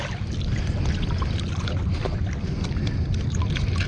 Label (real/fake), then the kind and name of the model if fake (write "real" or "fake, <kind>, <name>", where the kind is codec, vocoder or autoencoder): real